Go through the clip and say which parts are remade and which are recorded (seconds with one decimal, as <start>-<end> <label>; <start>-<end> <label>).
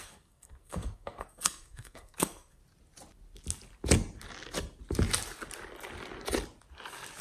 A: 0.0-2.6 remade; 2.6-7.2 recorded